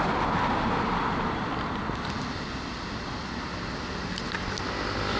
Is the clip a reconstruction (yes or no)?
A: no